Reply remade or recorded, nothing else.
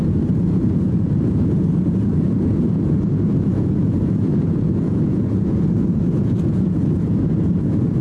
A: remade